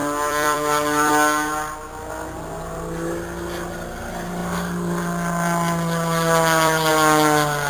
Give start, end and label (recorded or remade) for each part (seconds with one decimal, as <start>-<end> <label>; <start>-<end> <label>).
0.0-1.1 remade; 1.1-4.4 recorded; 4.4-6.9 remade; 6.9-7.7 recorded